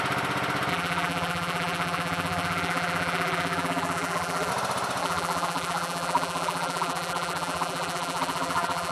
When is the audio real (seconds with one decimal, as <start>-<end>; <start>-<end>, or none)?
0.0-0.7; 4.5-5.0

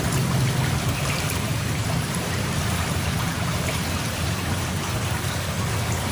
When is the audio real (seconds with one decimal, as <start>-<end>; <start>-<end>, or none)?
0.0-1.5; 5.2-6.1

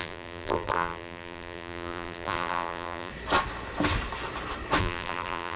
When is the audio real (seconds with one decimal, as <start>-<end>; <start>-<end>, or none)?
3.1-4.8

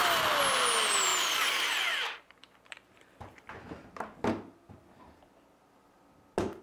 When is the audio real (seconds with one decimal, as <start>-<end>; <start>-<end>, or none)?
0.0-1.1; 3.5-6.6